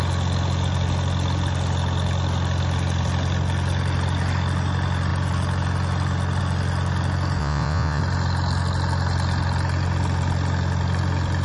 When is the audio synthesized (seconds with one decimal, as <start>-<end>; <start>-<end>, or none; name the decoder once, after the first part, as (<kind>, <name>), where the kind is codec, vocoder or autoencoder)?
7.4-8.0 (vocoder, Vocos)